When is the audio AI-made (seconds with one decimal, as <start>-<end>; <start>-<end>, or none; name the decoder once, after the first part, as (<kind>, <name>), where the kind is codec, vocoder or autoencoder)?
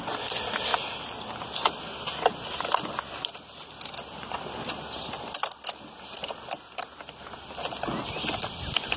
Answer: none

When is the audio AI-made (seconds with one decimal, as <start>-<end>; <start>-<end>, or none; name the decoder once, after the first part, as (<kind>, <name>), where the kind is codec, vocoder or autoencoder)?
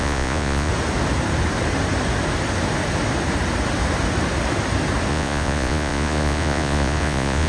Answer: 0.0-0.7 (vocoder, Vocos); 5.1-7.5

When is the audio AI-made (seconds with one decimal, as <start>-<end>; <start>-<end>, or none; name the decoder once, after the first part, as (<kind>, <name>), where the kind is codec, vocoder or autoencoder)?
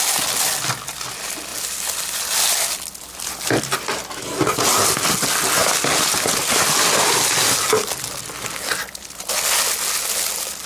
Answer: none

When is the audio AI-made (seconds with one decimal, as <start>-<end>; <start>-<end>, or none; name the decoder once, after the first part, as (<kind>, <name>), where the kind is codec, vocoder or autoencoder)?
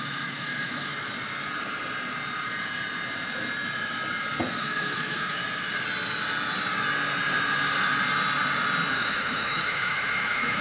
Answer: 0.0-0.9 (autoencoder, DAC-VAE); 4.6-5.4; 8.9-10.6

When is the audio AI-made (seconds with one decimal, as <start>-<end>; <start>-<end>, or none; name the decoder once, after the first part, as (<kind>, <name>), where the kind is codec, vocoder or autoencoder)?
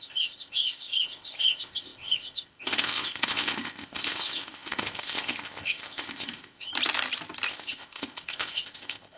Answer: 0.0-6.7 (codec, ZipCodec); 7.5-9.2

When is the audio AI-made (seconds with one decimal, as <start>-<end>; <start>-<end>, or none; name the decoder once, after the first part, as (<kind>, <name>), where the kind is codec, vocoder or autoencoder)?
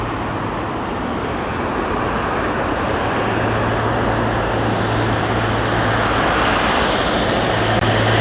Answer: none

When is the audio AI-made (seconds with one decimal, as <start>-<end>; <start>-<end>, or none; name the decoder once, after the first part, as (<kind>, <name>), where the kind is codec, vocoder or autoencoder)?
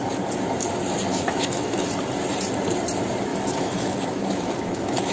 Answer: 1.1-1.8 (autoencoder, DAC-VAE); 3.3-5.1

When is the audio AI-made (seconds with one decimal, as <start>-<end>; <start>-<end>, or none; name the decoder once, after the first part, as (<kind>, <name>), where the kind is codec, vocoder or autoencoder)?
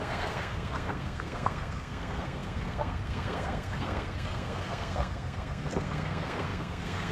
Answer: 0.0-7.1 (codec, SNAC)